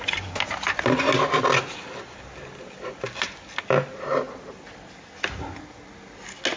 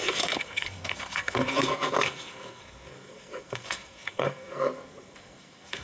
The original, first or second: first